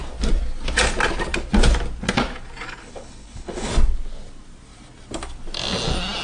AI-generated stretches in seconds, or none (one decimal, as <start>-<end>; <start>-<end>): 2.8-3.7